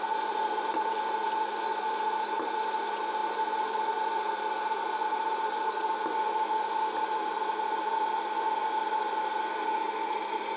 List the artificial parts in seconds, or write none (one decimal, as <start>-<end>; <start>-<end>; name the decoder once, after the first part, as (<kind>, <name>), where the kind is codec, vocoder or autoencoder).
none

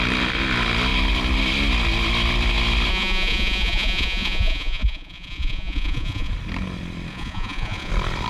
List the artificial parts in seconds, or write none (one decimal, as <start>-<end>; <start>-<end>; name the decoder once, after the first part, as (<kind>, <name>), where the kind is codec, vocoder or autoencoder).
2.9-6.3 (vocoder, Vocos); 7.1-7.9

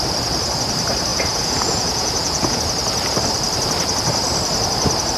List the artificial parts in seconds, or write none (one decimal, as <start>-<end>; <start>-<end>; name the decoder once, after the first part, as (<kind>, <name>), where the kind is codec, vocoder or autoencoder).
1.1-2.6 (vocoder, Vocos)

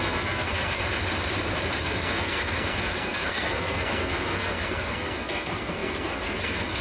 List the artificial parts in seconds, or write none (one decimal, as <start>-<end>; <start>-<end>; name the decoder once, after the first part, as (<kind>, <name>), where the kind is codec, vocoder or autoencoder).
0.0-0.8 (codec, SNAC); 1.8-6.8

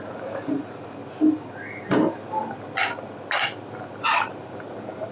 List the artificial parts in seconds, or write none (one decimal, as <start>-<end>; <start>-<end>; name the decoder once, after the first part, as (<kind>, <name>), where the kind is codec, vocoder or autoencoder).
0.0-1.0 (vocoder, BigVGAN v2); 4.1-5.1